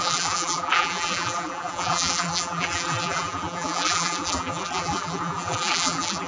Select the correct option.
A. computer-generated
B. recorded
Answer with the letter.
A